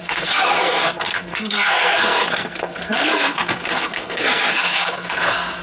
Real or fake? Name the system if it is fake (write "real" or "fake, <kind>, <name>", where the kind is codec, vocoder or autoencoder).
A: fake, codec, SNAC